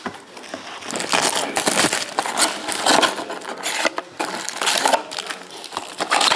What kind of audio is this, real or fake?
real